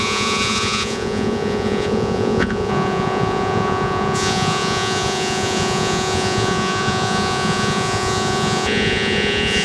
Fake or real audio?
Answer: fake